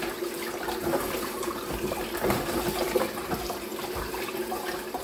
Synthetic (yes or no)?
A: no